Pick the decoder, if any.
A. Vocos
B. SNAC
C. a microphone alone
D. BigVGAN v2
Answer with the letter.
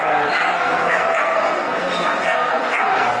B